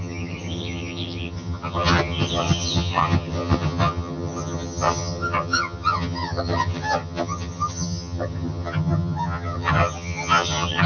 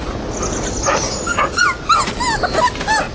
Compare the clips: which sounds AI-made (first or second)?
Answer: first